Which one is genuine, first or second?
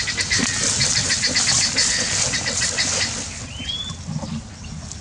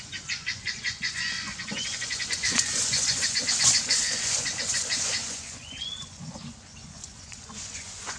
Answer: first